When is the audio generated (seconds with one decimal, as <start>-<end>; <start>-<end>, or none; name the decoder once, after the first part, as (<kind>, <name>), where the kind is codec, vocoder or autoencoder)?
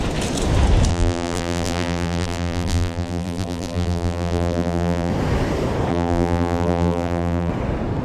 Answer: 0.9-5.1 (vocoder, BigVGAN v2); 5.9-7.5